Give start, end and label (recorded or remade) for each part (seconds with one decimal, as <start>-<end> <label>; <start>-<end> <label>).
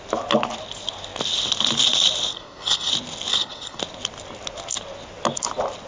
0.0-2.3 recorded; 2.3-2.9 remade; 2.9-3.3 recorded; 3.3-3.8 remade; 3.8-5.9 recorded